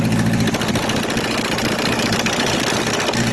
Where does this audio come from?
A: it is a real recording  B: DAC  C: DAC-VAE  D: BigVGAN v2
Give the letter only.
D